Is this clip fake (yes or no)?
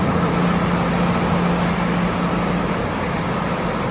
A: no